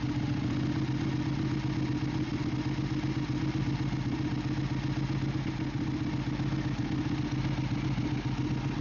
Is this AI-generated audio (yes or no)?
no